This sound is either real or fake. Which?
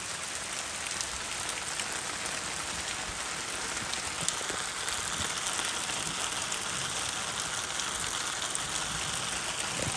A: real